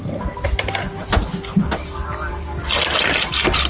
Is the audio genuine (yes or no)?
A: yes